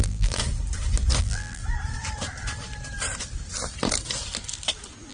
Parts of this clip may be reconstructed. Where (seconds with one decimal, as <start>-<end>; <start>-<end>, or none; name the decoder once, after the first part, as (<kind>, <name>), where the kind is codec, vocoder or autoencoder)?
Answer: 0.0-0.4 (vocoder, BigVGAN v2); 1.2-1.6